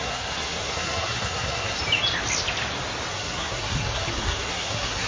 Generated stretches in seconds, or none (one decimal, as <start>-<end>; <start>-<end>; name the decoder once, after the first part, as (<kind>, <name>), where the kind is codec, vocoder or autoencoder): 0.0-1.8 (codec, SNAC); 3.1-5.1